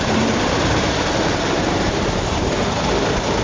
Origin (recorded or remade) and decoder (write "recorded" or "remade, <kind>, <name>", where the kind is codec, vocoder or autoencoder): remade, vocoder, BigVGAN v2